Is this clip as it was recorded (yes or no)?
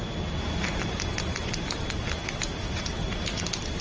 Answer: yes